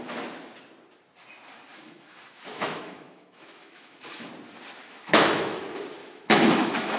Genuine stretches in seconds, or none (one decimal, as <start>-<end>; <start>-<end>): 0.0-1.7; 4.3-4.8; 5.6-6.0